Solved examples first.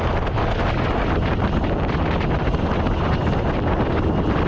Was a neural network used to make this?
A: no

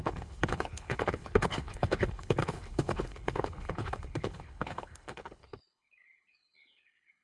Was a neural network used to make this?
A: yes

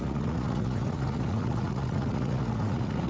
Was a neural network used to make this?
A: yes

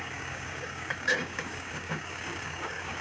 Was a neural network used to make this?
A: yes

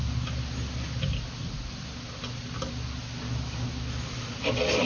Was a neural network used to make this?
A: no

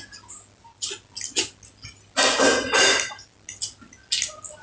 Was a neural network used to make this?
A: no